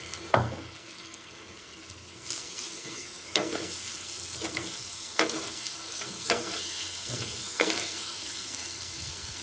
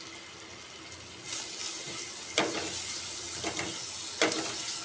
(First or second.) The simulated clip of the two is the first